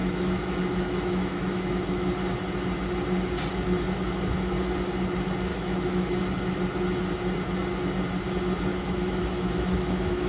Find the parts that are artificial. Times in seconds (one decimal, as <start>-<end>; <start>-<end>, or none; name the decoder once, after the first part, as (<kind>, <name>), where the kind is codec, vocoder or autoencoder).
0.0-2.1 (autoencoder, DAC-VAE); 5.5-6.2; 8.7-10.3